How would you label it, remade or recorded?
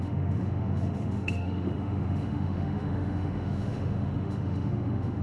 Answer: remade